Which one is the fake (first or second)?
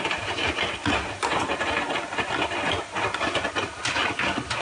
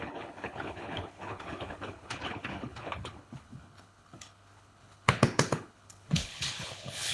second